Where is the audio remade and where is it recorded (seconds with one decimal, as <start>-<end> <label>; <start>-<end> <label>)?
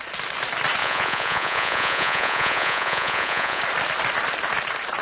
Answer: 0.0-0.8 recorded; 0.8-3.6 remade; 3.6-5.0 recorded